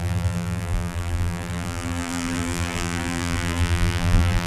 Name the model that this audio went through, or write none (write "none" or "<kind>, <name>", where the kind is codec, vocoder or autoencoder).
vocoder, BigVGAN v2